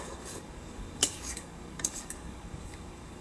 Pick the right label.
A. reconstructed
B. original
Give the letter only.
A